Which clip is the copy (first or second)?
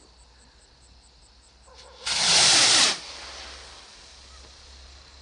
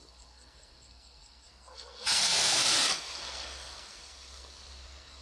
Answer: second